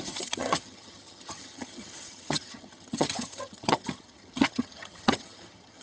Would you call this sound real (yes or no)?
no